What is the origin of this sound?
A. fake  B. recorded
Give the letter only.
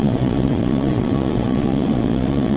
A